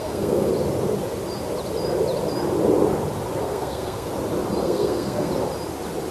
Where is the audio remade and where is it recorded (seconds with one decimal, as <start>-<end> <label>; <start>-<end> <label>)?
0.0-0.5 remade; 0.5-3.4 recorded; 3.4-4.1 remade; 4.1-4.6 recorded; 4.6-5.3 remade; 5.3-6.1 recorded